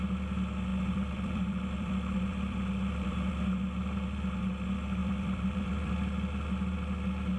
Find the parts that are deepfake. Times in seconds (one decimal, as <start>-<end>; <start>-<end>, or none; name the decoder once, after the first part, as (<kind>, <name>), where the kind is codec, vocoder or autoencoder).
0.7-3.3 (vocoder, BigVGAN v2); 5.0-5.9